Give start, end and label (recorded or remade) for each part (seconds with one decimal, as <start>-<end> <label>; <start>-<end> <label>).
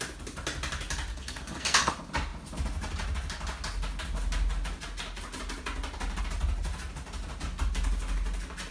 0.0-1.1 recorded; 1.1-1.9 remade; 1.9-8.7 recorded